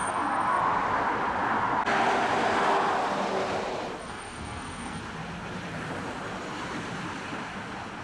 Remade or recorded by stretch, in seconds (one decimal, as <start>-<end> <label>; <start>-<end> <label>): 0.0-0.6 remade; 0.6-4.0 recorded; 4.0-5.0 remade; 5.0-8.0 recorded